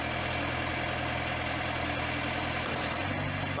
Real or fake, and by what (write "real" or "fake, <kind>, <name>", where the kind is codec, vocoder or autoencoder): real